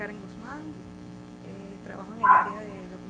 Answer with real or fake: fake